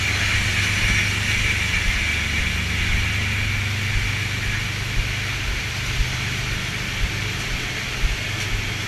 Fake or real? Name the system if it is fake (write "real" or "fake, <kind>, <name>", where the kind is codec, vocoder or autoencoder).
real